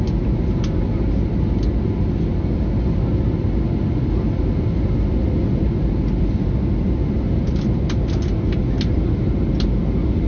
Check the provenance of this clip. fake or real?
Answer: real